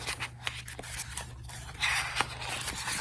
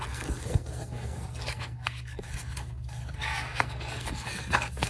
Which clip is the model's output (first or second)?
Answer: second